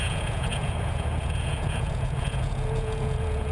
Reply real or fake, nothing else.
fake